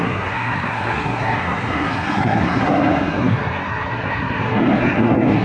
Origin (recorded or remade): remade